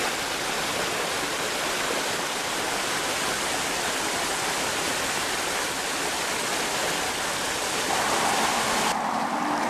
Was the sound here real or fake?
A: real